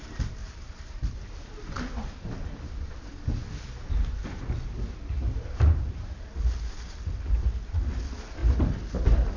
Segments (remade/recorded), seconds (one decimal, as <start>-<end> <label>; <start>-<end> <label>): 0.0-0.4 recorded; 0.4-1.1 remade; 1.1-9.4 recorded